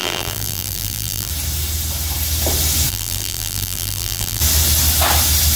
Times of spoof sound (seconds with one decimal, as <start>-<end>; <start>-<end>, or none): 0.0-1.3; 2.9-4.4